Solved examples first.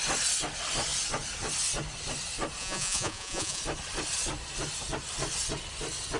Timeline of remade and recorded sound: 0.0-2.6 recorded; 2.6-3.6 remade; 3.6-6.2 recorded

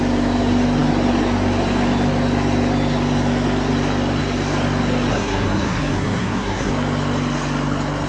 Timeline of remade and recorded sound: 0.0-5.1 recorded; 5.1-6.7 remade; 6.7-8.1 recorded

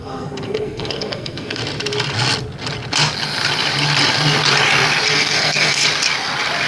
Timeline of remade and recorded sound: 0.0-1.6 remade; 1.6-5.1 recorded; 5.1-5.8 remade; 5.8-6.7 recorded

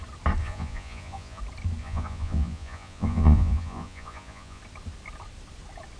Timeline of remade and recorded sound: 0.0-0.4 recorded; 0.4-1.4 remade; 1.4-1.8 recorded; 1.8-4.6 remade; 4.6-6.0 recorded

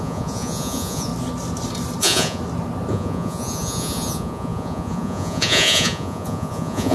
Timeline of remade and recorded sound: 0.0-1.1 remade; 1.1-2.0 recorded; 2.0-2.4 remade; 2.4-2.9 recorded; 2.9-6.9 remade

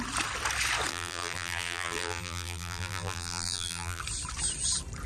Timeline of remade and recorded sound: 0.0-0.9 recorded; 0.9-4.0 remade; 4.0-5.1 recorded

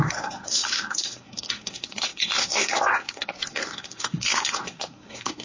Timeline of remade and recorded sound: 0.0-5.4 remade